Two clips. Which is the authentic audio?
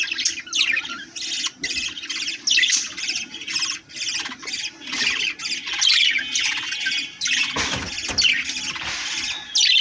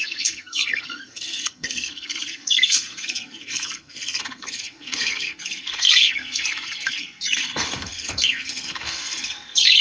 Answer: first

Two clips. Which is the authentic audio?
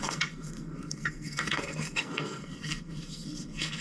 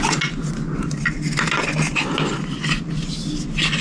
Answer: second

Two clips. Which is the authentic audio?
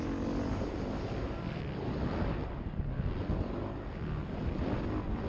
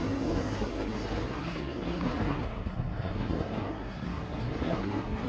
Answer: first